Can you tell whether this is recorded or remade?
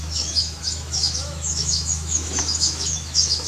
remade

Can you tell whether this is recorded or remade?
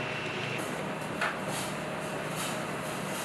recorded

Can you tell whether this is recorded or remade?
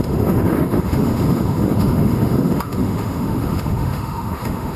remade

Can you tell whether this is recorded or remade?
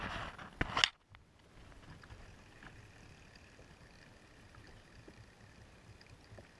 recorded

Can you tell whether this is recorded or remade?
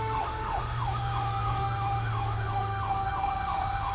remade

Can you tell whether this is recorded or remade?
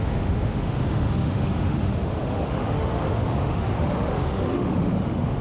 remade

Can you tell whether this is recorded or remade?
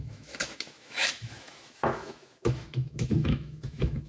remade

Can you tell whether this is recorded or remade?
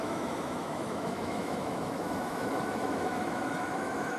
remade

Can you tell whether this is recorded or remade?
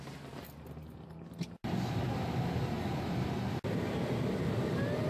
recorded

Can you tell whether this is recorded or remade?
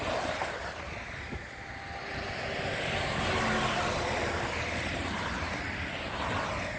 recorded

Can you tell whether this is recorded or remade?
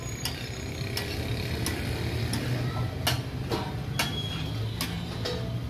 recorded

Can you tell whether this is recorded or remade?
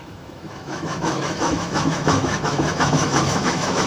remade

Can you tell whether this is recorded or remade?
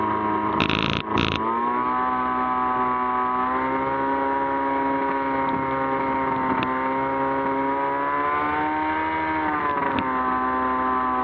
recorded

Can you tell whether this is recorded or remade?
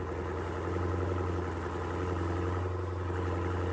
recorded